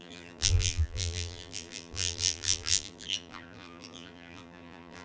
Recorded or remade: remade